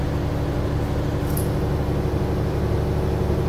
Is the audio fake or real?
real